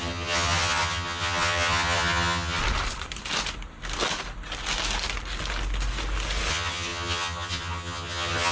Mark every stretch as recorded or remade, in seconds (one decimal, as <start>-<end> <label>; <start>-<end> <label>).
0.0-2.6 remade; 2.6-6.5 recorded; 6.5-8.5 remade

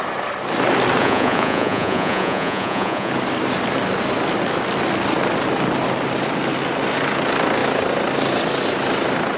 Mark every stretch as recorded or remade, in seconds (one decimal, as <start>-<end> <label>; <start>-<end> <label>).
0.0-1.0 recorded; 1.0-3.1 remade; 3.1-9.4 recorded

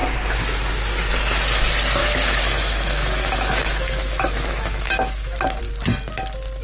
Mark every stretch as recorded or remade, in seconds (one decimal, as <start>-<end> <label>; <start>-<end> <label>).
0.0-2.0 recorded; 2.0-5.6 remade; 5.6-6.6 recorded